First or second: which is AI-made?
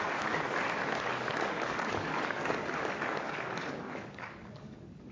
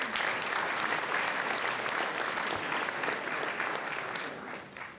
first